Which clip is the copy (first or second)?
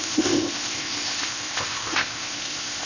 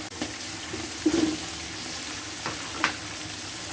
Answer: first